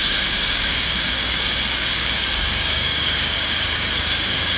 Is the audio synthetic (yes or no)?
yes